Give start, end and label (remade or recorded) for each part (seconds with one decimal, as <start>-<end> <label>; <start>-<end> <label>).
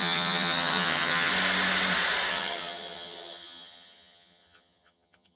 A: 0.0-1.3 remade; 1.3-2.3 recorded; 2.3-5.4 remade